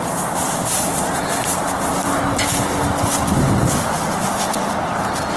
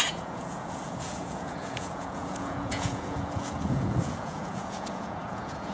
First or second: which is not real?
second